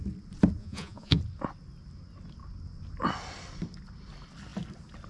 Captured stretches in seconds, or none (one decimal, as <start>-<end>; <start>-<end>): 0.0-0.6; 1.2-5.1